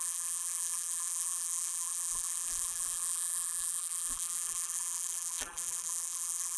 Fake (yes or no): yes